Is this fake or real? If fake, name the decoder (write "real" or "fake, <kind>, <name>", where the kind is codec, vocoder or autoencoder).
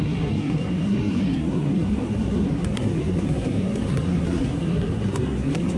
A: fake, codec, SNAC